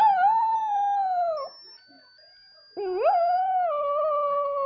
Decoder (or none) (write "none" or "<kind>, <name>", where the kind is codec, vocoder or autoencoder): none